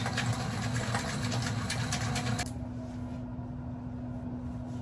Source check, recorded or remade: recorded